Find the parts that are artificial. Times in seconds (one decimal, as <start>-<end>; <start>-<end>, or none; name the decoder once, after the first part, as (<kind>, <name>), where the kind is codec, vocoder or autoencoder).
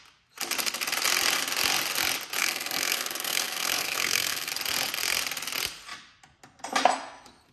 2.4-4.5 (codec, SNAC)